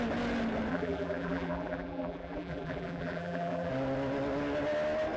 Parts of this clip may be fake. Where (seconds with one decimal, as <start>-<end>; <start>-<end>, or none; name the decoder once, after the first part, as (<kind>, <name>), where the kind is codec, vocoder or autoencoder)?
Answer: 0.7-3.7 (vocoder, BigVGAN v2)